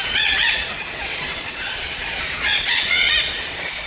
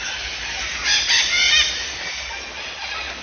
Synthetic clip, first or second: first